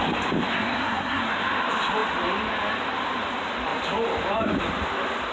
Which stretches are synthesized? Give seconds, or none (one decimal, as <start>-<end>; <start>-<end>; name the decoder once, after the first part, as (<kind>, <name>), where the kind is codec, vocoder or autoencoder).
0.5-1.3 (codec, SNAC)